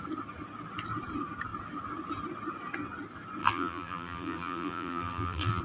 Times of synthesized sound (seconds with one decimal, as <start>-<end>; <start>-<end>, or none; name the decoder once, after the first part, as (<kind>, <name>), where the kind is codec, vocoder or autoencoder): 3.4-5.6 (vocoder, BigVGAN v2)